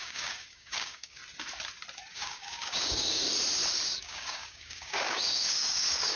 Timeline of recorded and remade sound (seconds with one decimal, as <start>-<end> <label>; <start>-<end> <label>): 0.0-1.2 remade; 1.2-2.1 recorded; 2.1-3.2 remade; 3.2-4.0 recorded; 4.0-6.2 remade

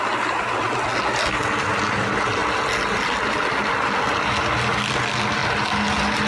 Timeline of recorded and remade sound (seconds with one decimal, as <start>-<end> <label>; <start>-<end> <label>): 0.0-6.3 recorded

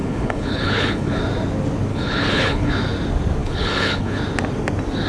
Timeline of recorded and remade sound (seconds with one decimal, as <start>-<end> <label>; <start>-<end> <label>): 0.0-1.2 remade; 1.2-1.9 recorded; 1.9-2.7 remade; 2.7-3.4 recorded; 3.4-4.2 remade; 4.2-5.1 recorded

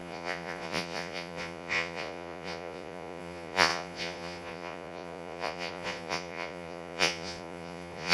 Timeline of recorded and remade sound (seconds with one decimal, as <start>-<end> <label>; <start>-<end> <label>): 0.0-8.1 remade

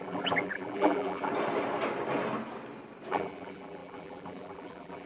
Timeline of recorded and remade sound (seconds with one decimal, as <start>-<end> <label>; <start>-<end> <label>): 0.0-1.3 remade; 1.3-3.1 recorded; 3.1-5.1 remade

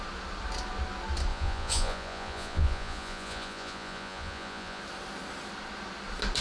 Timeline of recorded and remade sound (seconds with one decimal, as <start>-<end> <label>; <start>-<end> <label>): 0.0-1.3 recorded; 1.3-4.8 remade; 4.8-6.4 recorded

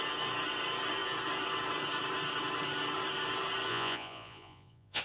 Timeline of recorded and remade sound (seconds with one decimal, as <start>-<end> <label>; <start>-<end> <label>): 0.0-3.7 recorded; 3.7-5.0 remade

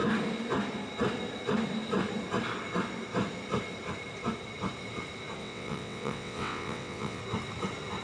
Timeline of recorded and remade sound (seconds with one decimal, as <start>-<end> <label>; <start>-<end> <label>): 0.0-5.4 recorded; 5.4-7.2 remade; 7.2-8.0 recorded